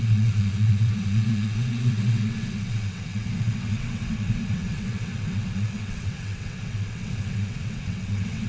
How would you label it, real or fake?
fake